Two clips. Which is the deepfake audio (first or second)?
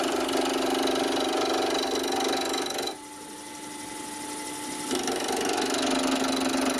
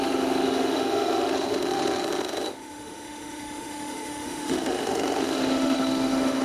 second